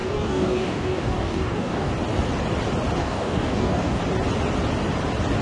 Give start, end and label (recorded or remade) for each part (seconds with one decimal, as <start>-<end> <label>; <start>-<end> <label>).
0.0-1.9 remade; 1.9-3.0 recorded; 3.0-4.0 remade; 4.0-5.4 recorded

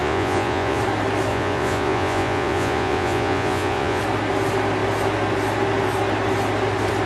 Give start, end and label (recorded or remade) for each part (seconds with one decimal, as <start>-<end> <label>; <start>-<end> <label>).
0.0-0.8 remade; 0.8-1.3 recorded; 1.3-4.0 remade; 4.0-7.1 recorded

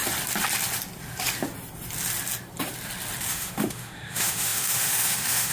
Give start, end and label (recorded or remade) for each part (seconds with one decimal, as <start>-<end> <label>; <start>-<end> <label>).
0.0-3.3 recorded; 3.3-5.5 remade

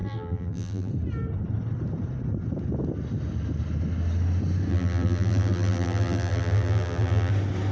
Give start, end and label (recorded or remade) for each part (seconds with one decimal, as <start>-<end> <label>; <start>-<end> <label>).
0.0-0.9 remade; 0.9-4.7 recorded; 4.7-7.3 remade; 7.3-7.7 recorded

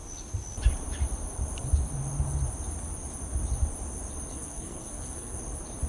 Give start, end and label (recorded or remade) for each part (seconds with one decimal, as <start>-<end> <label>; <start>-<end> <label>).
0.0-4.3 recorded; 4.3-5.4 remade; 5.4-5.9 recorded

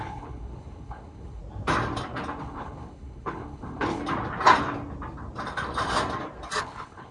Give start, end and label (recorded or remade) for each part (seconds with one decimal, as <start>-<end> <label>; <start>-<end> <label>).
0.0-1.4 remade; 1.4-2.4 recorded; 2.4-4.0 remade; 4.0-6.6 recorded; 6.6-7.1 remade